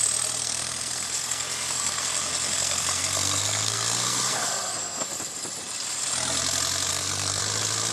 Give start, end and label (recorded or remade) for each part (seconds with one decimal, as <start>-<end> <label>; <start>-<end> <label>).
0.0-0.4 recorded; 0.4-5.1 remade; 5.1-6.9 recorded; 6.9-7.4 remade; 7.4-7.9 recorded